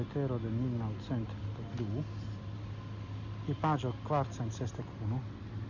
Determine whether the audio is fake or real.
real